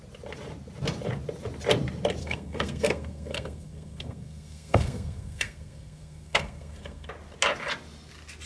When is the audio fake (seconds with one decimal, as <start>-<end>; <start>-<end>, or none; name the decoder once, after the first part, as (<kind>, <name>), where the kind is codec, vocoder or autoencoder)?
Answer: 2.2-7.1 (codec, SNAC)